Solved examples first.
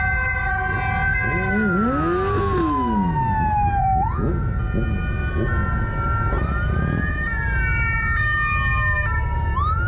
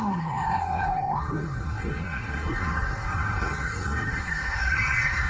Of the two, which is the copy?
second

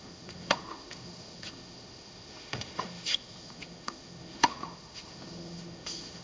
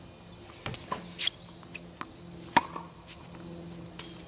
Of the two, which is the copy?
first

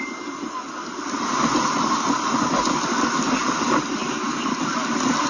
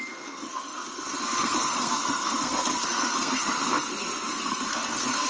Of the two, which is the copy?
second